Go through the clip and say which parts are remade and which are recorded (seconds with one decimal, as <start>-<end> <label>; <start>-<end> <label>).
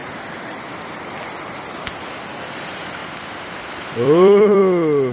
0.0-1.6 remade; 1.6-3.0 recorded; 3.0-4.6 remade; 4.6-5.1 recorded